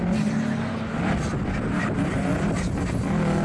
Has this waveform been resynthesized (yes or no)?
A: no